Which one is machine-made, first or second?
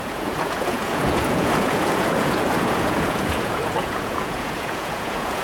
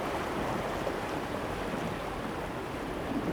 first